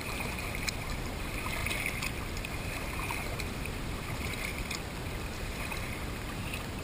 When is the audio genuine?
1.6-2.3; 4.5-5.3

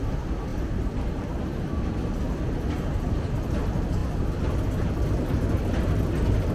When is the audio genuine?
0.0-6.5

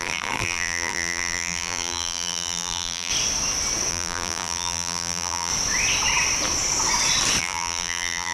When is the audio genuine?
3.1-3.9; 5.5-7.4

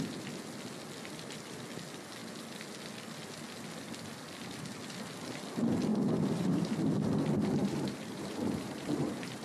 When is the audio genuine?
0.0-5.9; 6.7-7.6

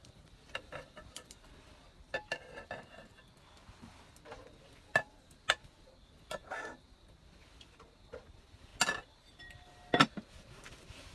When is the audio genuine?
0.0-11.1